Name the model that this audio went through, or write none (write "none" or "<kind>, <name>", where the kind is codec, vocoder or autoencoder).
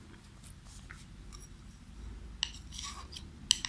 none